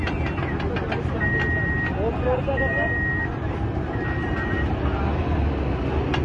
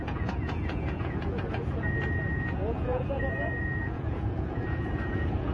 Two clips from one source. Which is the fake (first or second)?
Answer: second